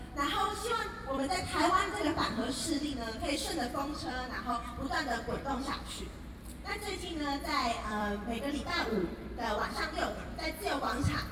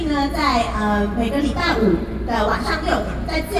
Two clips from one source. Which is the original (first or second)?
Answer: second